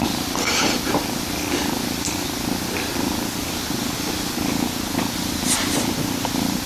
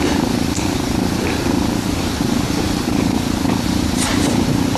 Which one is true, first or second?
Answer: first